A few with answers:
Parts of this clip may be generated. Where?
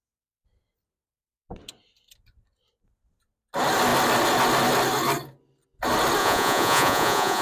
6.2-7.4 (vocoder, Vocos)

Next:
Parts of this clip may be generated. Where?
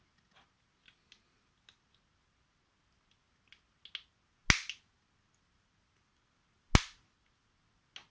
none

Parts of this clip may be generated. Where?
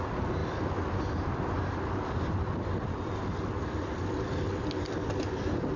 none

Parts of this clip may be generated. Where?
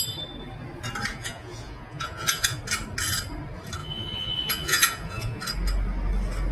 1.1-2.6 (vocoder, Vocos); 3.8-5.4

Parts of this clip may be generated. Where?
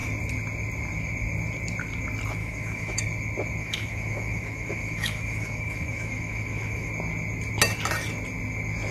2.4-3.0 (autoencoder, DAC-VAE); 3.6-6.9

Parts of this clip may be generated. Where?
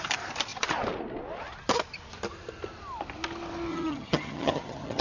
3.7-5.0 (vocoder, HiFi-GAN)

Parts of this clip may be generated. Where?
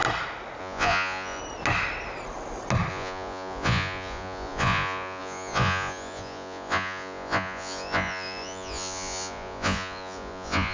0.6-1.4 (vocoder, Vocos); 2.9-10.7